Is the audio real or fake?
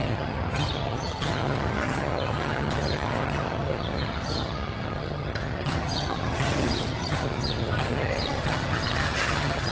fake